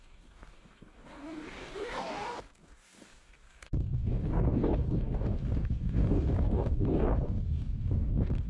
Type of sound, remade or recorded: remade